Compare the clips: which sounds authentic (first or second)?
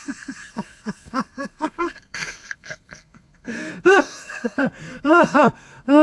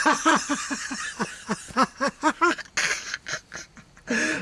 second